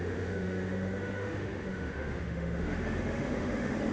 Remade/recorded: remade